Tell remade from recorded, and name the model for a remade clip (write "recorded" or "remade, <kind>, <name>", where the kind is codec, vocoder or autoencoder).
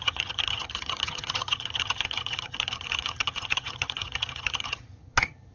remade, vocoder, HiFi-GAN